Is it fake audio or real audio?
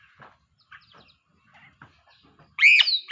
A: real